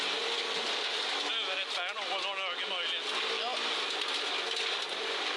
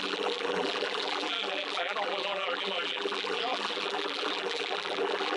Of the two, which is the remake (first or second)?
second